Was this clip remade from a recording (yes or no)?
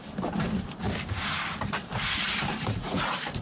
yes